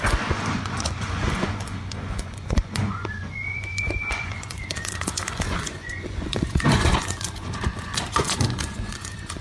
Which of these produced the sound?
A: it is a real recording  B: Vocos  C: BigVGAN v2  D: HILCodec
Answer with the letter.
B